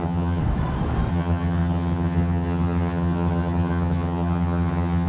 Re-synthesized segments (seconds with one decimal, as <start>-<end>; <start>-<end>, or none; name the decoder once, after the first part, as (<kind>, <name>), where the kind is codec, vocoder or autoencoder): 0.0-0.4 (vocoder, HiFi-GAN); 1.1-5.1